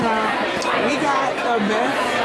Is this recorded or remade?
recorded